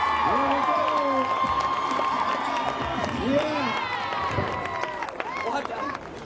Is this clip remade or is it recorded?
recorded